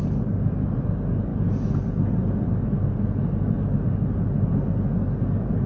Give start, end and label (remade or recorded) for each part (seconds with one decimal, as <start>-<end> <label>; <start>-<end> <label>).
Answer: 0.0-5.7 recorded